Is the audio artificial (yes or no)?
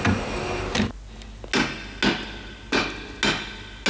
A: no